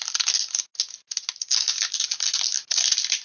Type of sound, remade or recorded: recorded